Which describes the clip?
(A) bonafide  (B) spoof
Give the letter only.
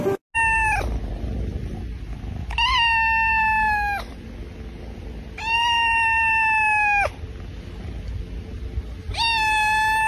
A